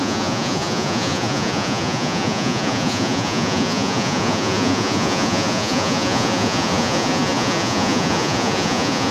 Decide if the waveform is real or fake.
fake